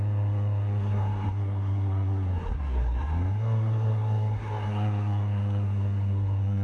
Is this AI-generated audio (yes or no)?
yes